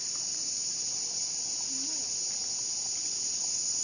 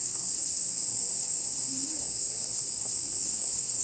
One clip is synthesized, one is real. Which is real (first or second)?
first